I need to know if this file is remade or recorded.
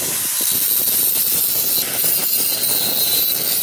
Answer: recorded